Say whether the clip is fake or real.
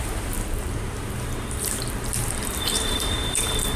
fake